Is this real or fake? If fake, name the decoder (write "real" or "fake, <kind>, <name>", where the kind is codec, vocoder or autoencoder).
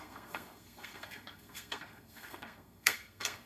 fake, codec, SNAC